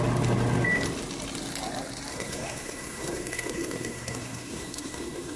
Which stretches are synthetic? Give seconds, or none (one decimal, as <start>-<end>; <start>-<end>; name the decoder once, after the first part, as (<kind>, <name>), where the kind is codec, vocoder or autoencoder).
2.1-5.4 (codec, SNAC)